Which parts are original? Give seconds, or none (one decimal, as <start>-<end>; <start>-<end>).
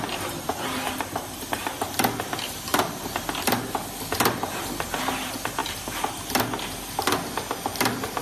0.0-8.2